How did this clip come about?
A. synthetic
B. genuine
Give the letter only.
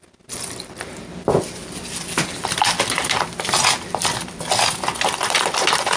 B